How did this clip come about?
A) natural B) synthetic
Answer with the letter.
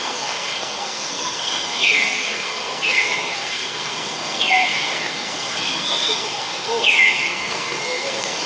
B